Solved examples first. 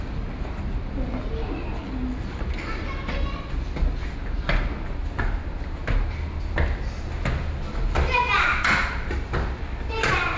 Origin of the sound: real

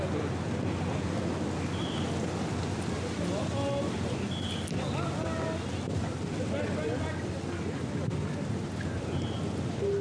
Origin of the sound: real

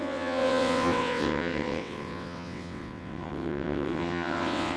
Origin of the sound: fake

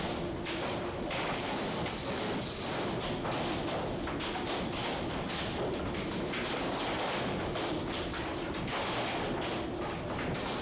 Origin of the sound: real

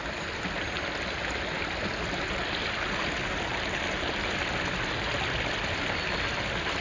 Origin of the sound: real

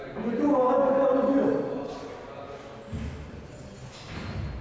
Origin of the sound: real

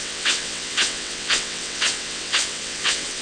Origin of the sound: fake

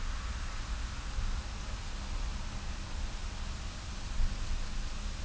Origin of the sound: real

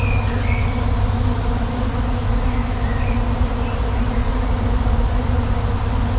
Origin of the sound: real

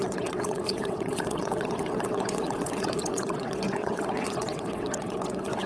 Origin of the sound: fake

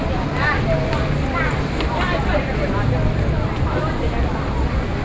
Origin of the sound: real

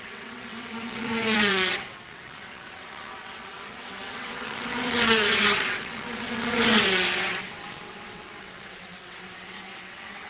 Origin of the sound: fake